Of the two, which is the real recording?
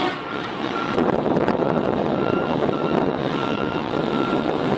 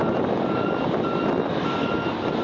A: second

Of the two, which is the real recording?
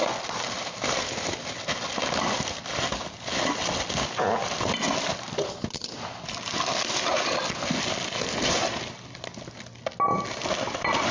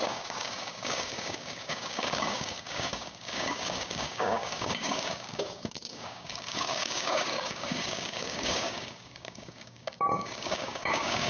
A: first